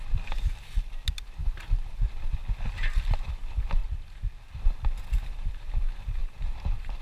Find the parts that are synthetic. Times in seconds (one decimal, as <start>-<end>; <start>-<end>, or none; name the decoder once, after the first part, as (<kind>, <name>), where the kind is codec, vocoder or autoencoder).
1.4-2.0 (vocoder, BigVGAN v2); 6.2-7.0